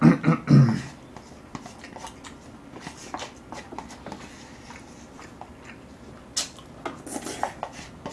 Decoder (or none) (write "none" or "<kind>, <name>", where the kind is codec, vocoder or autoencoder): none